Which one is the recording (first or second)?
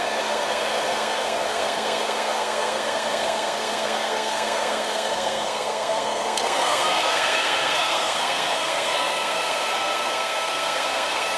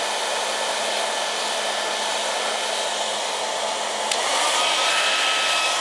second